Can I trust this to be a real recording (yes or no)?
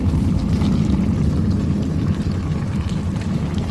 yes